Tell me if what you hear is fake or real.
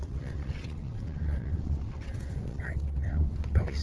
fake